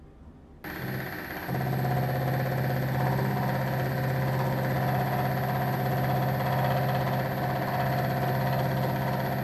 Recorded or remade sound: recorded